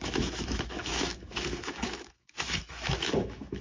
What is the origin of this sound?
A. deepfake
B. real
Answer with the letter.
A